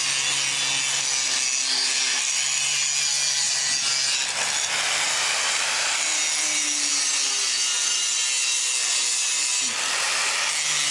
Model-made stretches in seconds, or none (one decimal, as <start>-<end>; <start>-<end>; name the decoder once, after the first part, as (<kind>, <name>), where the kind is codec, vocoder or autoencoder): none